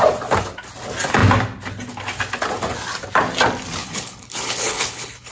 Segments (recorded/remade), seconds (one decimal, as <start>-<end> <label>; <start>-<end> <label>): 0.0-3.8 recorded; 3.8-5.3 remade